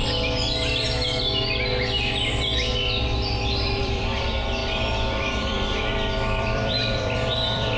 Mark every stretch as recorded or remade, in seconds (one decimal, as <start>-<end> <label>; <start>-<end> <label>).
0.0-3.8 recorded; 3.8-7.8 remade